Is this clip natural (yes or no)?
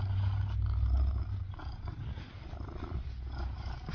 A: yes